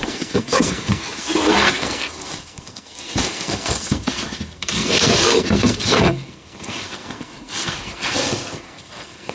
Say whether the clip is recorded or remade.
remade